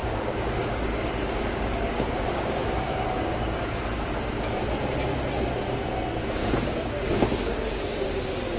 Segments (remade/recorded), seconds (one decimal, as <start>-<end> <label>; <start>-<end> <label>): 0.0-3.6 remade; 3.6-6.4 recorded; 6.4-8.2 remade; 8.2-8.6 recorded